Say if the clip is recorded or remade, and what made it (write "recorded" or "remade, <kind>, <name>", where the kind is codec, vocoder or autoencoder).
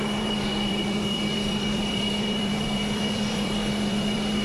remade, vocoder, BigVGAN v2